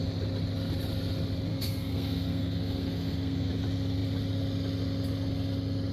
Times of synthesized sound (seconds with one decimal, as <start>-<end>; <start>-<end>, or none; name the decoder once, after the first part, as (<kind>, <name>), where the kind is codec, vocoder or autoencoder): 1.5-3.5 (codec, SNAC)